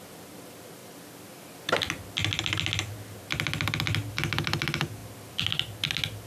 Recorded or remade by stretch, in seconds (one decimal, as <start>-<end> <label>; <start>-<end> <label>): 0.0-6.3 recorded